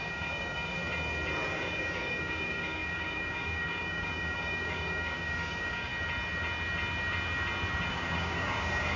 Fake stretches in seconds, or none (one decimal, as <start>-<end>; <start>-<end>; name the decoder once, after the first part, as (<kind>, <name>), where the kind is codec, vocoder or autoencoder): 0.0-0.8 (codec, DAC); 1.5-5.9; 7.9-9.0